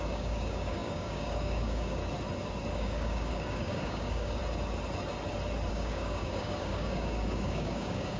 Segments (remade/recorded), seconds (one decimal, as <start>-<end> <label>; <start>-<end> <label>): 0.0-2.0 remade; 2.0-2.7 recorded; 2.7-4.4 remade; 4.4-5.7 recorded; 5.7-8.2 remade